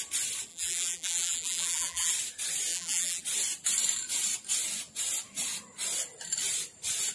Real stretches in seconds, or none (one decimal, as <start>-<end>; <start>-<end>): 0.0-0.5; 2.1-2.7; 3.2-7.1